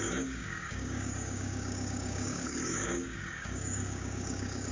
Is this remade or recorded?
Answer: remade